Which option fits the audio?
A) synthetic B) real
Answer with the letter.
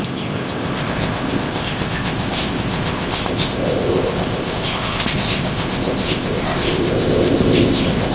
A